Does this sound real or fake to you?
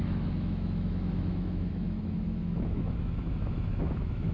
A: fake